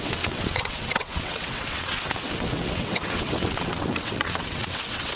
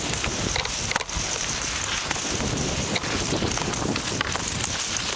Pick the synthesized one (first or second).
first